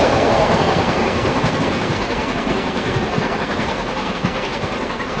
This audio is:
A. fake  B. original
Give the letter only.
A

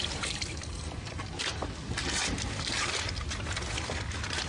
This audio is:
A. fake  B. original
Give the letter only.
B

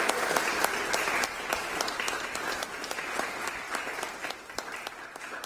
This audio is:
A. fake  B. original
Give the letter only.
B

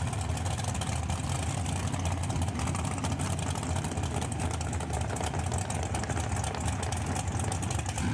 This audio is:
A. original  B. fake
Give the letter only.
A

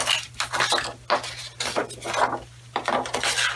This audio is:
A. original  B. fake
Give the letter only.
A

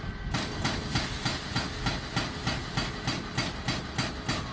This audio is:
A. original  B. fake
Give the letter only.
A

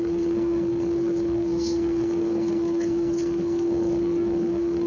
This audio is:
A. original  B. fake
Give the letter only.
B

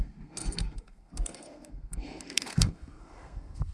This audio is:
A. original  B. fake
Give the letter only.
B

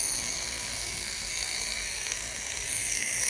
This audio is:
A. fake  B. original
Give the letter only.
A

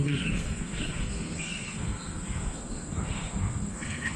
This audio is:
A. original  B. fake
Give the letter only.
B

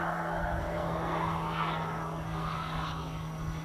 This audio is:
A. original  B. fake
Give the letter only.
B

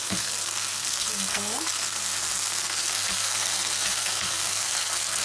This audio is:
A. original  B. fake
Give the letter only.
B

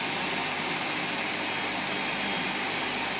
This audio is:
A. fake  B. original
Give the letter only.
B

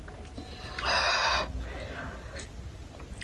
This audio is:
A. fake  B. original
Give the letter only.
B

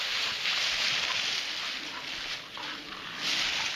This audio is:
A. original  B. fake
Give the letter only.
A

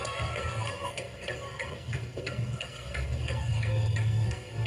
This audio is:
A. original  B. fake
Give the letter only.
B